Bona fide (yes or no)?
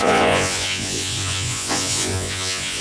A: no